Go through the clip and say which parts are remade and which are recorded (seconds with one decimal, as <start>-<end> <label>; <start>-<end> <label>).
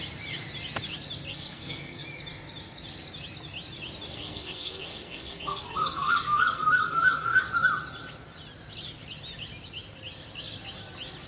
0.0-1.3 recorded; 1.3-2.0 remade; 2.0-4.1 recorded; 4.1-7.4 remade; 7.4-11.3 recorded